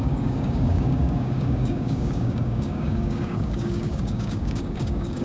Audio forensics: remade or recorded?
remade